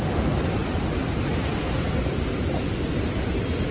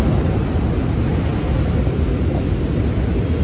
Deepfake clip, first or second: first